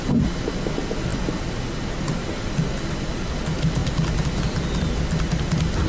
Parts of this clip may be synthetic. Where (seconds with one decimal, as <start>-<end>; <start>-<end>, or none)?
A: none